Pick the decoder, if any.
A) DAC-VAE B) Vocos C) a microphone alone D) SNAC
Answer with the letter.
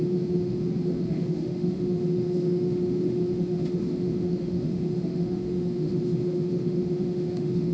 A